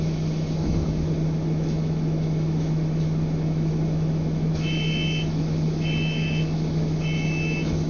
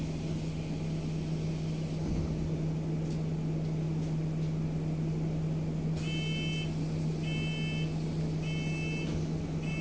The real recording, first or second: second